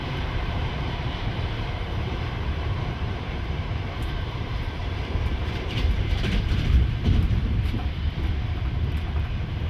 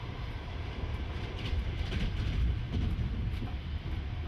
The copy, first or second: first